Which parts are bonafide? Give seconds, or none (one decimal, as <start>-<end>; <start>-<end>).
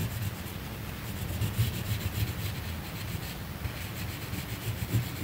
0.0-5.2